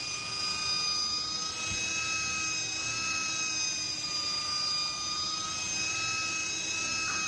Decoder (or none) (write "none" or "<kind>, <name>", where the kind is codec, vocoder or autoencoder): none